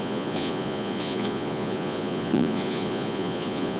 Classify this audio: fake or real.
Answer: fake